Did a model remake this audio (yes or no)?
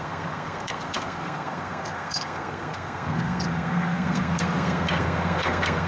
yes